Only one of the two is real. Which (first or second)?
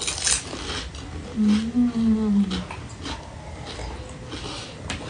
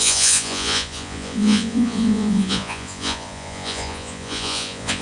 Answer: first